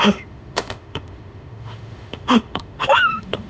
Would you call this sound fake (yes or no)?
yes